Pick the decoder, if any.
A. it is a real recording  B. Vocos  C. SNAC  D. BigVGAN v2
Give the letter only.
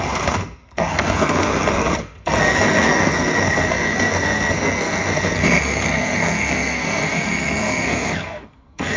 C